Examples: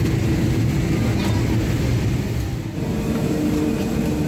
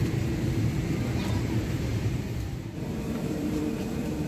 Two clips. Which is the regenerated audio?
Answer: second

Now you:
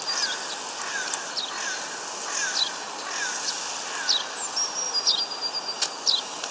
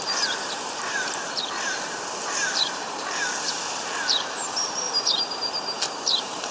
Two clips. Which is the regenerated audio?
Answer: second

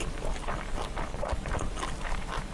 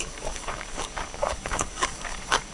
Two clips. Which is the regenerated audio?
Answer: second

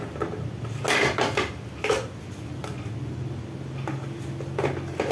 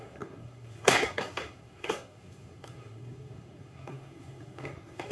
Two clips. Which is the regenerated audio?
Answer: second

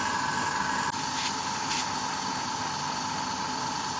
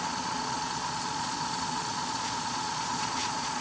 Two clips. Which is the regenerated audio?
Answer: second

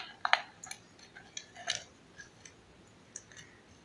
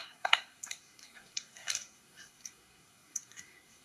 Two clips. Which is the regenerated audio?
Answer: second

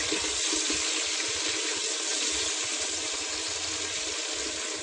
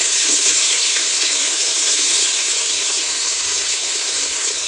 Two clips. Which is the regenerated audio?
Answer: second